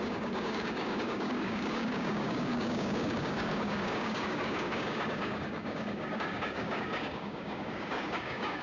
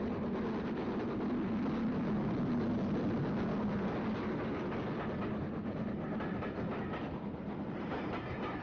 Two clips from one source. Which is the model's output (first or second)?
first